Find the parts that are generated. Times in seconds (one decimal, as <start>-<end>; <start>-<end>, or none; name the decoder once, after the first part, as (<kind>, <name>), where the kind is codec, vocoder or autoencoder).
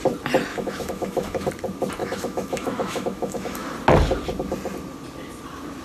0.5-1.5 (autoencoder, DAC-VAE); 2.0-3.7